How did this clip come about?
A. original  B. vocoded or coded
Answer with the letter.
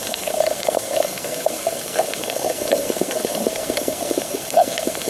B